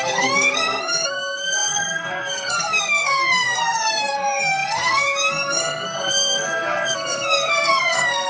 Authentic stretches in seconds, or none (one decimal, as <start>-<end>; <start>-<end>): none